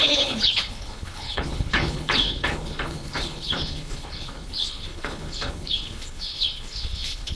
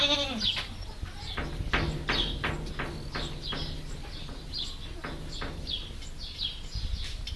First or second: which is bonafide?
second